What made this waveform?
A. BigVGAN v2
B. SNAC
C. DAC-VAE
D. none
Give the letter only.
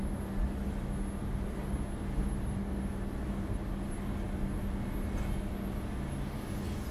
D